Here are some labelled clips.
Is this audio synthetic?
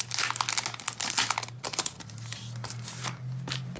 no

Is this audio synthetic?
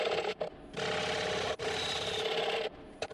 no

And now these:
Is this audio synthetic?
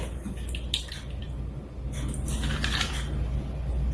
no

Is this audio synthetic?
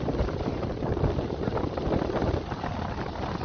no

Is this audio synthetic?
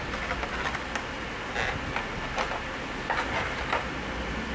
no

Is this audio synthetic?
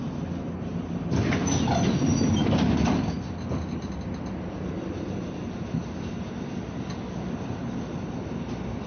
no